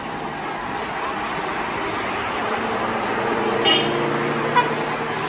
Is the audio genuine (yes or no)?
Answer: yes